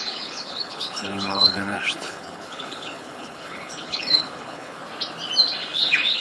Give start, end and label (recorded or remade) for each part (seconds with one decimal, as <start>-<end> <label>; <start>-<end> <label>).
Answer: 0.0-4.8 remade; 4.8-5.6 recorded; 5.6-6.2 remade